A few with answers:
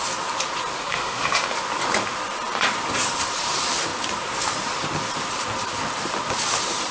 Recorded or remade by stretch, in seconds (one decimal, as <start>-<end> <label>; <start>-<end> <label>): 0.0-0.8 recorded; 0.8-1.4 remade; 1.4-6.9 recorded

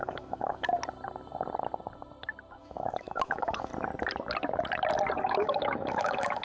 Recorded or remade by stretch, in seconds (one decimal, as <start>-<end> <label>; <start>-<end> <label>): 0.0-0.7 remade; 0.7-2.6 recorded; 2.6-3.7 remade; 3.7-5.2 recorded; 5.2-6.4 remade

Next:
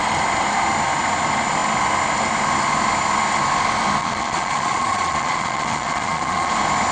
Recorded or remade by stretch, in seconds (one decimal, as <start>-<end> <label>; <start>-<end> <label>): 0.0-4.0 recorded; 4.0-6.5 remade; 6.5-6.9 recorded

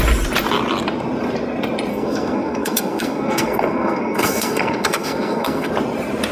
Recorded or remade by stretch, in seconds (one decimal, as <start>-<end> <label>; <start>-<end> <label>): 0.0-1.9 recorded; 1.9-5.7 remade; 5.7-6.3 recorded